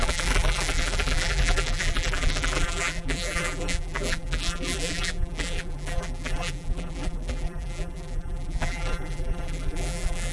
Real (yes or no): no